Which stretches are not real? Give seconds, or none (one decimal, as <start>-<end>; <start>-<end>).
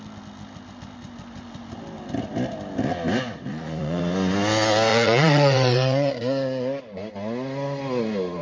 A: 3.5-4.0; 4.9-6.1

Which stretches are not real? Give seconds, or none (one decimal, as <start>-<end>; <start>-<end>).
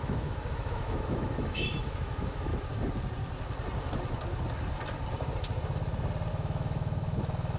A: 0.0-2.5; 6.3-7.6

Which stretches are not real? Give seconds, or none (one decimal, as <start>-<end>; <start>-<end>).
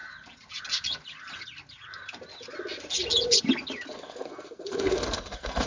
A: 3.9-5.7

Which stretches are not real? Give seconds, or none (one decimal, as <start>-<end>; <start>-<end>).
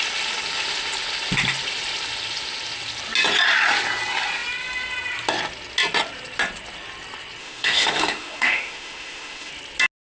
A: 7.4-9.5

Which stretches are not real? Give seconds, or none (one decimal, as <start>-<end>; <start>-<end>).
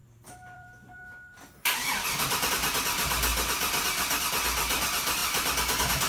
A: 0.0-2.5